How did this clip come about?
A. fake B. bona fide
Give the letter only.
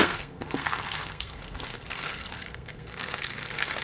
A